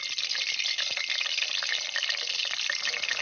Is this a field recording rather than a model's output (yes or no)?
yes